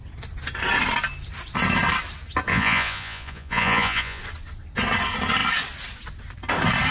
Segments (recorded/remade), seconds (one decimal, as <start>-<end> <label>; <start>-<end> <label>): 0.0-2.5 recorded; 2.5-4.2 remade; 4.2-6.9 recorded